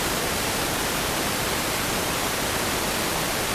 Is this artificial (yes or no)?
yes